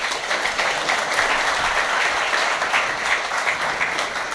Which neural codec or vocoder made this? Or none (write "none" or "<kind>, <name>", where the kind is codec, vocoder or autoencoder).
none